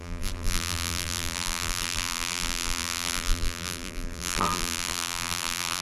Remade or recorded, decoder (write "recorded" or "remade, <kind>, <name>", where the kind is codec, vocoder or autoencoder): remade, vocoder, BigVGAN v2